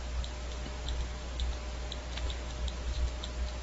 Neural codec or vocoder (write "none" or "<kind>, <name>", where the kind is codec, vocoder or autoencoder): none